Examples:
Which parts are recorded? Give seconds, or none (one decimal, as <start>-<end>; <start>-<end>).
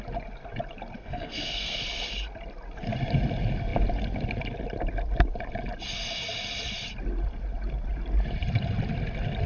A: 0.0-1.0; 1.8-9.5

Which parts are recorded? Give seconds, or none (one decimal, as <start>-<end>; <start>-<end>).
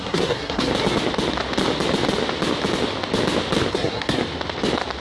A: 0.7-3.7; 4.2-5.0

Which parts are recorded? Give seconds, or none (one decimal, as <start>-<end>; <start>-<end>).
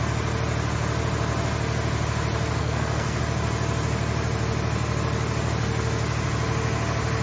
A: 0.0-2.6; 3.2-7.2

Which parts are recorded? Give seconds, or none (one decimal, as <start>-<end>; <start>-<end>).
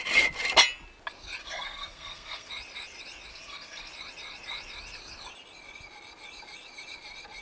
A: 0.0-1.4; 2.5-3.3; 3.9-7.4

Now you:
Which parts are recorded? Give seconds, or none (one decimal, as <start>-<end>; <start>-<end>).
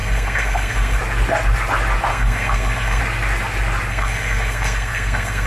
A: 1.0-2.1; 3.0-3.9